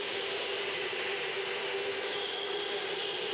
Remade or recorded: recorded